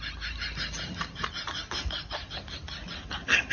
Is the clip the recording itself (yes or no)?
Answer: yes